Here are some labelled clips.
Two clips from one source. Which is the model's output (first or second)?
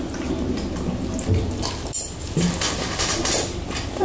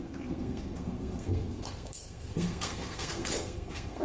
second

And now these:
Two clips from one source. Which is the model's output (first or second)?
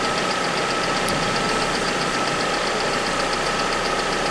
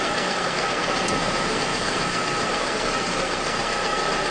second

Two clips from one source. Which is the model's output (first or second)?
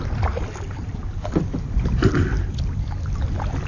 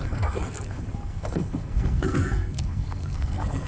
second